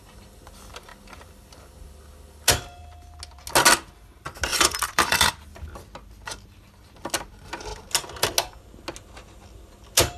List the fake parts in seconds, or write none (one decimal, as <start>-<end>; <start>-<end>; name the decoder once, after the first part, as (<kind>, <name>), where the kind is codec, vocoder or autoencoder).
4.5-5.3 (vocoder, BigVGAN v2)